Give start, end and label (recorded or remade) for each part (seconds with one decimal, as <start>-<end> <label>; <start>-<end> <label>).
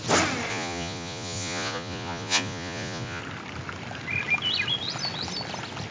0.0-0.5 recorded; 0.5-3.2 remade; 3.2-5.9 recorded